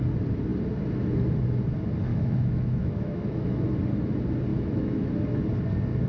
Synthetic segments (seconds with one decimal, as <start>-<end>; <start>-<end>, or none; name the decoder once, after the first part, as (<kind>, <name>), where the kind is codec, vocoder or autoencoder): 2.1-3.7 (autoencoder, DAC-VAE); 4.5-5.1